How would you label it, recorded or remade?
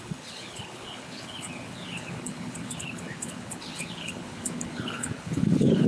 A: remade